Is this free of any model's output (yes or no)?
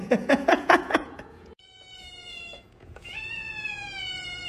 no